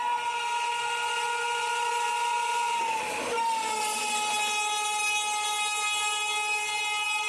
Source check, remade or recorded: recorded